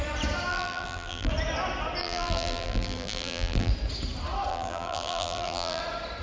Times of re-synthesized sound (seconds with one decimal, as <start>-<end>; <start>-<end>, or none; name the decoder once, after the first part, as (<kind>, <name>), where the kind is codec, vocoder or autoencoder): 0.5-1.3 (vocoder, BigVGAN v2); 2.0-3.7; 4.5-5.8